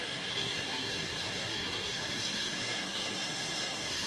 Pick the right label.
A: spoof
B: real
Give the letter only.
A